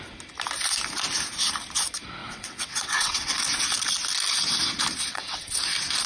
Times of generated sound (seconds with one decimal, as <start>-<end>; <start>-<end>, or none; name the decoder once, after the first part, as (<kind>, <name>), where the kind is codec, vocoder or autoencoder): 2.2-3.4 (vocoder, WaveNeXt); 5.1-5.6